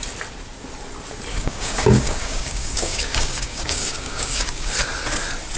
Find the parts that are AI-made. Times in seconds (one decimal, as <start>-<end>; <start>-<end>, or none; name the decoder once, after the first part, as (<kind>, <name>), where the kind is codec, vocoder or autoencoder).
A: 1.3-4.7 (codec, DAC)